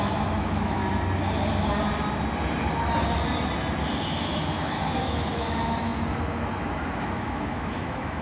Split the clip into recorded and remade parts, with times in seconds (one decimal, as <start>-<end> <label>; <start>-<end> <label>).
0.0-0.8 remade; 0.8-4.2 recorded; 4.2-8.2 remade